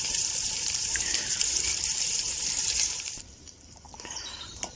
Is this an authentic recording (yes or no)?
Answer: no